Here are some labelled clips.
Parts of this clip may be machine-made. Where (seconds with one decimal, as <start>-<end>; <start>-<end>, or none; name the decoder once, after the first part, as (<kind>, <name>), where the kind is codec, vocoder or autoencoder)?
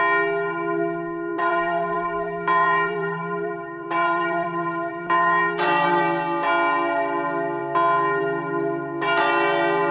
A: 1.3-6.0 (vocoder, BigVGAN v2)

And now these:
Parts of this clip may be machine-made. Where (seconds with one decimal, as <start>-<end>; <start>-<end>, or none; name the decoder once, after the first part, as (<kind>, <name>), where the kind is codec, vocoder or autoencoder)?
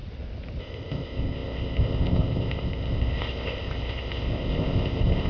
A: 0.6-5.3 (codec, ZipCodec)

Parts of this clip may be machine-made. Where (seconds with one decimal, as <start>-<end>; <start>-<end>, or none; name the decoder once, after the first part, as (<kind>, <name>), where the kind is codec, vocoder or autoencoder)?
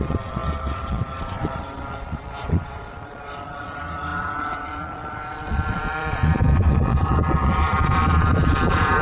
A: 0.0-9.0 (vocoder, Vocos)